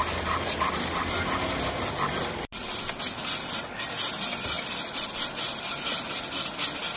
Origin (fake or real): real